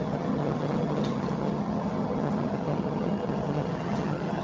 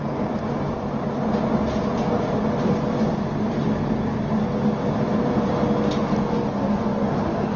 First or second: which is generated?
first